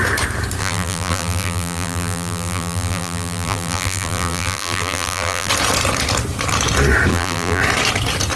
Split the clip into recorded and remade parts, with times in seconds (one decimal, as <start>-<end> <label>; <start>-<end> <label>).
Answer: 0.0-0.6 recorded; 0.6-5.5 remade; 5.5-7.1 recorded; 7.1-7.6 remade; 7.6-8.4 recorded